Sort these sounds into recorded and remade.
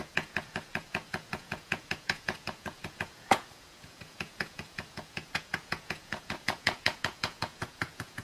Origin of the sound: remade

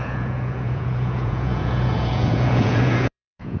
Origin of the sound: remade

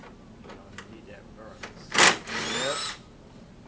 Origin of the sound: recorded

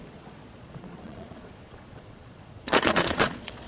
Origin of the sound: remade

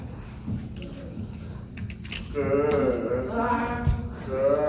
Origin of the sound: recorded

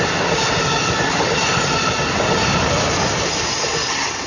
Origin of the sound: recorded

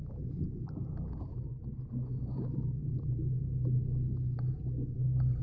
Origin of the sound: recorded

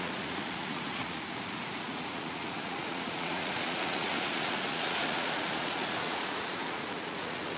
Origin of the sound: remade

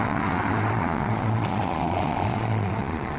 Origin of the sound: remade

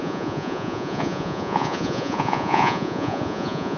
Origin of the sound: remade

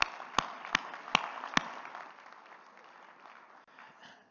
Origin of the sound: recorded